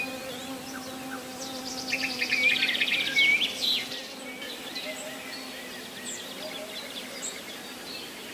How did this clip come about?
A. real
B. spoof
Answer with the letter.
A